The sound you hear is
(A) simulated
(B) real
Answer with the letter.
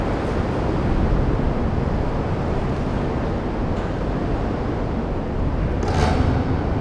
B